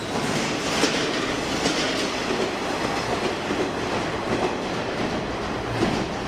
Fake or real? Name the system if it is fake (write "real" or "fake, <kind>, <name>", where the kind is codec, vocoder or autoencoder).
real